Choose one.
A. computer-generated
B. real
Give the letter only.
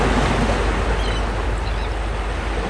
B